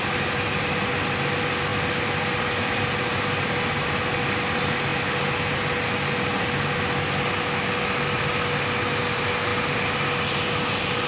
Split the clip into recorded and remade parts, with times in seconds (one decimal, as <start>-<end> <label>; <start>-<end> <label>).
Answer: 0.0-11.1 recorded